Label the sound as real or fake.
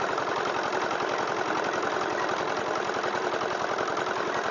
real